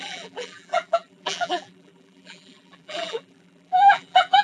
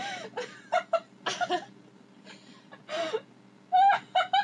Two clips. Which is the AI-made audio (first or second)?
first